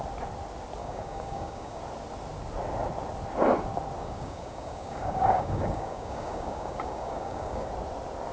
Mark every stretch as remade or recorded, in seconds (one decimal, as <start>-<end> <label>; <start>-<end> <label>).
0.0-0.8 recorded; 0.8-1.8 remade; 1.8-4.0 recorded; 4.0-7.7 remade; 7.7-8.3 recorded